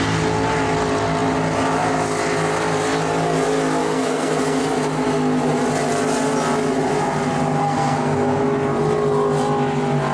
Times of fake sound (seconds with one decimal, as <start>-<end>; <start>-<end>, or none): 3.8-4.6; 7.6-8.4

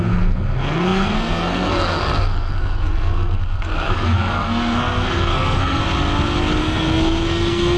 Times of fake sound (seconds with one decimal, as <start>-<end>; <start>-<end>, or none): 0.0-5.8; 6.6-7.8